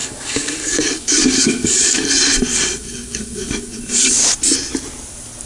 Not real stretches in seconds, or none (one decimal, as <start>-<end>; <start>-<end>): 0.0-2.1; 2.8-3.8